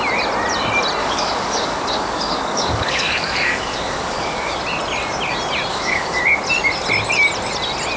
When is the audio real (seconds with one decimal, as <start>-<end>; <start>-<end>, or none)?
0.0-1.0; 4.6-5.7; 6.2-8.0